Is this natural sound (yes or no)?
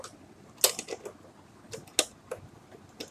yes